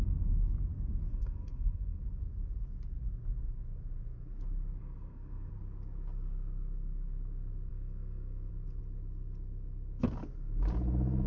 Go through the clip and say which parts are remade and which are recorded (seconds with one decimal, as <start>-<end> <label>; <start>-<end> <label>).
0.0-1.1 recorded; 1.1-2.0 remade; 2.0-4.8 recorded; 4.8-5.5 remade; 5.5-7.7 recorded; 7.7-8.5 remade; 8.5-11.3 recorded